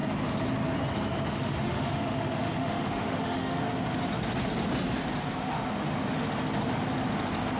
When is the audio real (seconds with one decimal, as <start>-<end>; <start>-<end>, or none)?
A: 0.0-1.3; 3.6-5.4; 6.2-7.6